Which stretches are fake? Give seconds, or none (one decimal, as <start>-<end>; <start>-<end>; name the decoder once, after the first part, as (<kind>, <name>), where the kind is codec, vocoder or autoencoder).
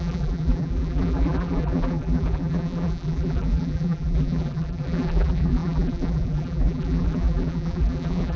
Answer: 0.0-8.4 (vocoder, BigVGAN v2)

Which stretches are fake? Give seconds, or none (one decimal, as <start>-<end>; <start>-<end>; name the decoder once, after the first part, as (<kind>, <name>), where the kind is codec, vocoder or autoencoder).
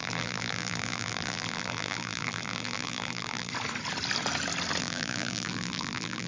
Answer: 0.0-3.5 (vocoder, BigVGAN v2); 4.8-6.3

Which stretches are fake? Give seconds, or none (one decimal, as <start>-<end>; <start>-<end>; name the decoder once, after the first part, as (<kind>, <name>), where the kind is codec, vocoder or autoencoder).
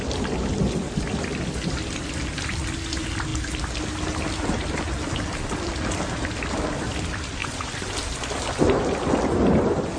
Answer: 7.4-7.9 (vocoder, Vocos)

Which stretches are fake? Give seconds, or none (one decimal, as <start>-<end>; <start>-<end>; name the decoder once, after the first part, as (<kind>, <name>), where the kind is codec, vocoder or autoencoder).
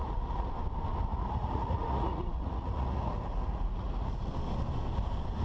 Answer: 0.0-0.5 (vocoder, Vocos); 1.1-4.3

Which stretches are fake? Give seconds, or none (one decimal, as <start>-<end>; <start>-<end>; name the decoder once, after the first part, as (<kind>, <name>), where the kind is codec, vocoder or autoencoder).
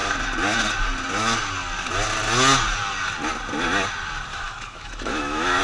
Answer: 4.3-5.6 (autoencoder, DAC-VAE)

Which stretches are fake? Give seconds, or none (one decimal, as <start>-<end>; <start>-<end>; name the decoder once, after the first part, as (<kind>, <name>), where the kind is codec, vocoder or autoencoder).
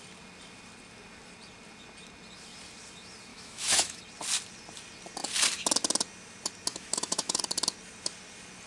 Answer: 3.3-4.0 (autoencoder, DAC-VAE); 6.7-7.4